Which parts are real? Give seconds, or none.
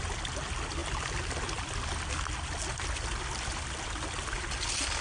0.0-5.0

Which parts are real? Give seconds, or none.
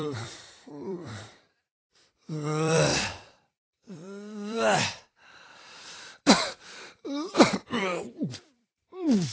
none